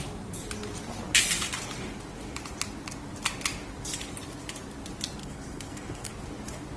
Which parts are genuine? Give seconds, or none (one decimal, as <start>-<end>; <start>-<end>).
0.0-5.2; 6.1-6.8